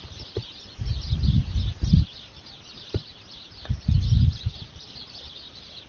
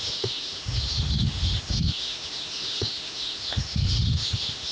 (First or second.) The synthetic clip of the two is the second